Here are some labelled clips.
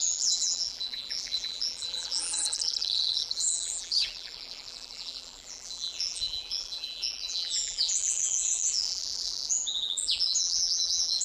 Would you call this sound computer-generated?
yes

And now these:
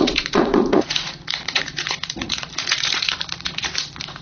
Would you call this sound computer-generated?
yes